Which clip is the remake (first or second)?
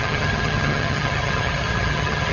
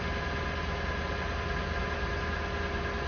first